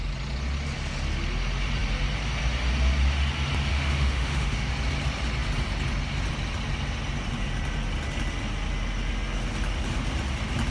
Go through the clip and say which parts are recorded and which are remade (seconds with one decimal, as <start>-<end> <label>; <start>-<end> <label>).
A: 0.0-3.7 recorded; 3.7-4.7 remade; 4.7-10.7 recorded